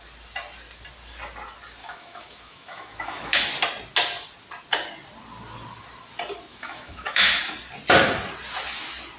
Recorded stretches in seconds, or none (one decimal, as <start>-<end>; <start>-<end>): 0.0-1.8; 3.5-6.5; 7.4-9.2